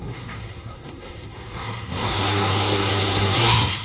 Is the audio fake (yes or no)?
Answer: yes